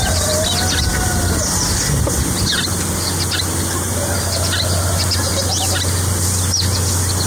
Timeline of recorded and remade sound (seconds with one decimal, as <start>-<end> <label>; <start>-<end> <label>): 0.0-7.3 recorded